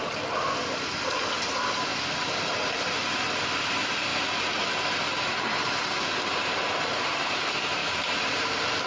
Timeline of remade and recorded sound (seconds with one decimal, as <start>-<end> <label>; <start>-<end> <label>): 0.0-1.9 recorded; 1.9-3.2 remade; 3.2-7.8 recorded; 7.8-8.9 remade